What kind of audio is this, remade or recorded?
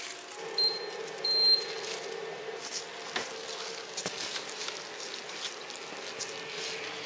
recorded